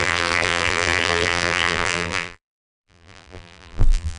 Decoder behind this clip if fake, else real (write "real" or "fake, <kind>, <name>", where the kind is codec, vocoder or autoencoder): fake, vocoder, BigVGAN v2